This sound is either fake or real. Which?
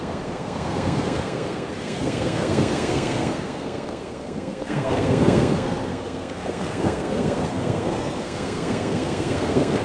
fake